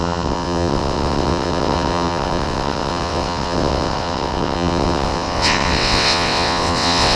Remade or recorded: remade